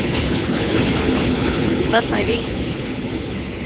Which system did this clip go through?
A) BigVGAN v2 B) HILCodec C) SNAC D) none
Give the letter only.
B